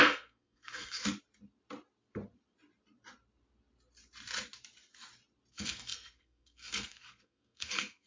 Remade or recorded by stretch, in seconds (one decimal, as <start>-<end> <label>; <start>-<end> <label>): 0.0-1.0 remade; 1.0-5.5 recorded; 5.5-8.1 remade